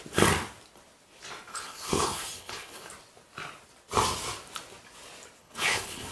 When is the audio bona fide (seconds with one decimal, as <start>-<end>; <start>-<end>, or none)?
0.0-1.5; 2.9-5.4